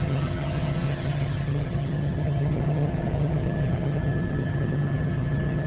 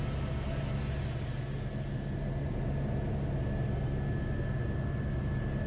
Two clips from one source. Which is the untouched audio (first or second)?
second